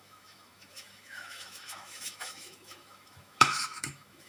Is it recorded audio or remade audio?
remade